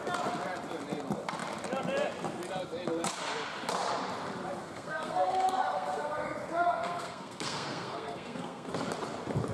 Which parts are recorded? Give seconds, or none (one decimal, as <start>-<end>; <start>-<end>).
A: 0.0-4.6; 8.7-9.5